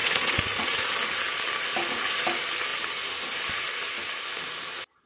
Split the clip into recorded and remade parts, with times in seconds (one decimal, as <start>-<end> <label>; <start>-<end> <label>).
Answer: 0.0-0.9 remade; 0.9-5.1 recorded